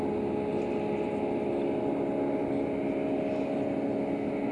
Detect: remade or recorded recorded